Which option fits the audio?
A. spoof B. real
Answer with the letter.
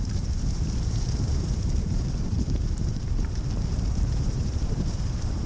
A